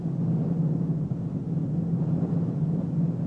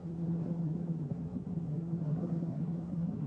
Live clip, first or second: first